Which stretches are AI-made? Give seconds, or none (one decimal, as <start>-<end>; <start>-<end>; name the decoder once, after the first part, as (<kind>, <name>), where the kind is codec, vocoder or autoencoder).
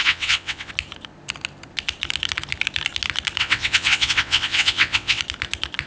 0.0-0.7 (vocoder, WaveNeXt); 3.4-5.2